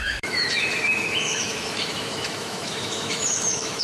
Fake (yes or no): yes